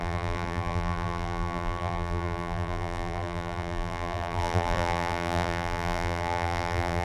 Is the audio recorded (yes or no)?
no